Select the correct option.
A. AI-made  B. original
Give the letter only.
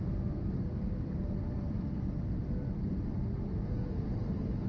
B